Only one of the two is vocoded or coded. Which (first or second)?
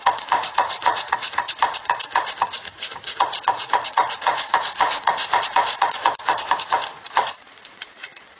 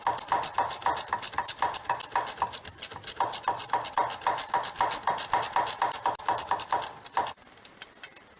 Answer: first